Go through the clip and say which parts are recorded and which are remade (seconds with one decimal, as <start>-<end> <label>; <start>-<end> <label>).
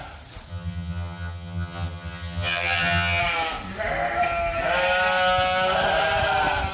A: 0.0-0.5 recorded; 0.5-3.2 remade; 3.2-6.7 recorded